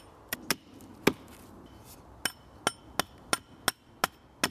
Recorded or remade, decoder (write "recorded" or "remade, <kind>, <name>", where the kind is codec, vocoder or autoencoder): recorded